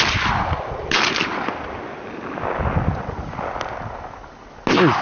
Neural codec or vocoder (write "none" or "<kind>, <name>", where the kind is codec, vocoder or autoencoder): none